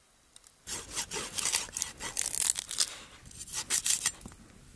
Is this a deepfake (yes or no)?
no